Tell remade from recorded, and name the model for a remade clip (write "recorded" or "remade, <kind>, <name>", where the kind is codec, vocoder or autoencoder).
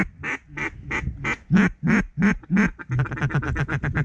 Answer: recorded